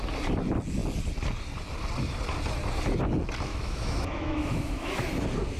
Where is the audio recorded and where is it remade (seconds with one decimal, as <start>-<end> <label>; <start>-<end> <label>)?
0.0-3.5 recorded; 3.5-5.1 remade; 5.1-5.6 recorded